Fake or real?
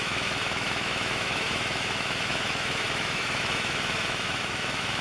fake